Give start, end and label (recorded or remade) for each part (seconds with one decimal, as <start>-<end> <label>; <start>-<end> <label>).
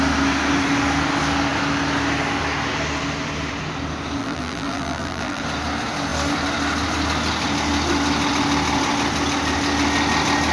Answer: 0.0-4.2 recorded; 4.2-5.4 remade; 5.4-10.5 recorded